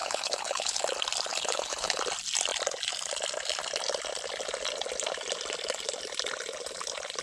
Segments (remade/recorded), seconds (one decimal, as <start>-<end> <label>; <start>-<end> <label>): 0.0-0.8 remade; 0.8-1.3 recorded; 1.3-2.0 remade; 2.0-7.2 recorded